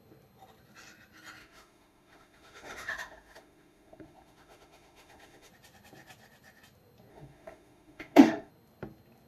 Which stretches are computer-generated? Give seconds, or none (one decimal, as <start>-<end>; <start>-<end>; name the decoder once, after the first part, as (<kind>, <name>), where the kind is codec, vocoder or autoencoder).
1.4-5.5 (autoencoder, DAC-VAE); 7.1-8.5